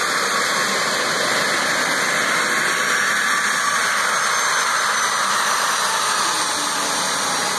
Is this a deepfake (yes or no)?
no